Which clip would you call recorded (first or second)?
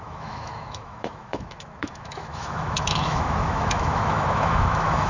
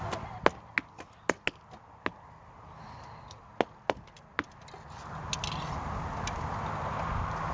second